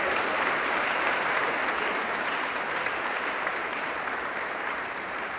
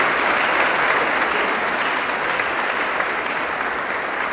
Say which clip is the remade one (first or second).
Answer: first